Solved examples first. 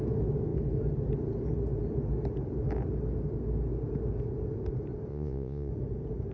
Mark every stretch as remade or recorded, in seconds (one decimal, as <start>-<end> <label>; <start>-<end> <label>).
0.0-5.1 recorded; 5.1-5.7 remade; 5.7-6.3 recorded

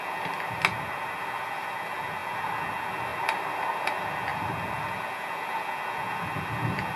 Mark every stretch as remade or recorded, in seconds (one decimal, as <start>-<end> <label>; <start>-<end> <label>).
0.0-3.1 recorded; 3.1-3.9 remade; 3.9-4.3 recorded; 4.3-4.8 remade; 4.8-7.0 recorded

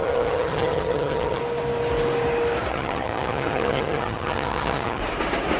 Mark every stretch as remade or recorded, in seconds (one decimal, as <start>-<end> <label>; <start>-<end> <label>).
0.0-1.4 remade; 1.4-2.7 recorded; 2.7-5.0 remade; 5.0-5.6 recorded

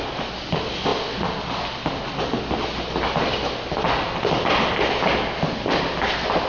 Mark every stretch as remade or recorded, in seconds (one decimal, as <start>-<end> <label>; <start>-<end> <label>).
0.0-6.5 recorded

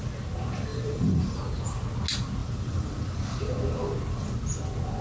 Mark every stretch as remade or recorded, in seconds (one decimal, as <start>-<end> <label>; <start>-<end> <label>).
0.0-0.7 recorded; 0.7-1.4 remade; 1.4-2.4 recorded; 2.4-3.0 remade; 3.0-5.0 recorded

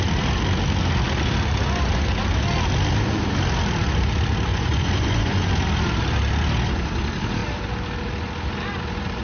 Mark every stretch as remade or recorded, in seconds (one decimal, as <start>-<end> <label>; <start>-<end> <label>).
0.0-4.5 recorded; 4.5-5.5 remade; 5.5-9.2 recorded